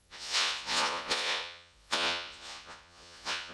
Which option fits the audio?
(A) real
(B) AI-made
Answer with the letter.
B